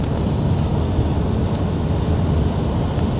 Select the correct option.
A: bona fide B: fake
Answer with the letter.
A